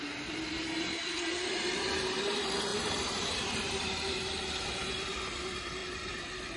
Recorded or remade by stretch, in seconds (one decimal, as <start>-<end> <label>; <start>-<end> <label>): 0.0-2.7 recorded; 2.7-3.4 remade; 3.4-6.6 recorded